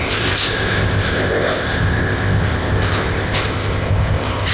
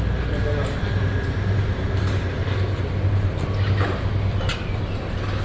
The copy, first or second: first